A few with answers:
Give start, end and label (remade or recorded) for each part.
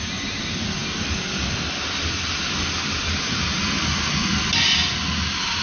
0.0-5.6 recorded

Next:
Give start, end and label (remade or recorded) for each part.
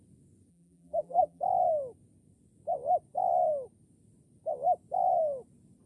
0.0-0.5 recorded; 0.5-1.4 remade; 1.4-5.9 recorded